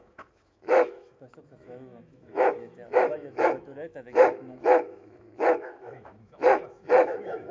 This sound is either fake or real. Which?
fake